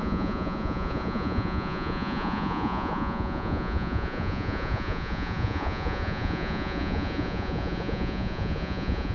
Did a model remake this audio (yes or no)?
yes